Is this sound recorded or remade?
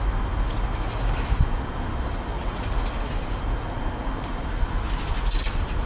recorded